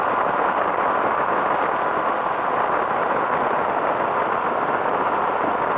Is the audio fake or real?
real